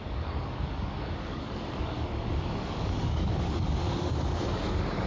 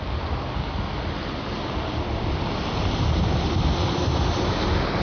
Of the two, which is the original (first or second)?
second